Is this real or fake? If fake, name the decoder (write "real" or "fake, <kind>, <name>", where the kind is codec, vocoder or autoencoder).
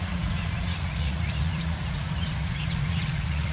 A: fake, vocoder, Vocos